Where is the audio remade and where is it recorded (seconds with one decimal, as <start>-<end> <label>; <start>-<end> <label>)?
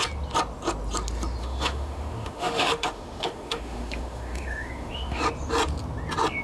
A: 0.0-1.4 recorded; 1.4-5.2 remade; 5.2-6.4 recorded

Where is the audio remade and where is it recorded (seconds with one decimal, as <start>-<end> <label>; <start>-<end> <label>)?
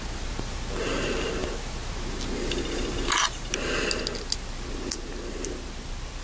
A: 0.0-6.2 recorded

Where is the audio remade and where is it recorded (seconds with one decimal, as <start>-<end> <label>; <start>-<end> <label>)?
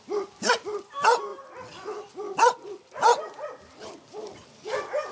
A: 0.0-5.1 recorded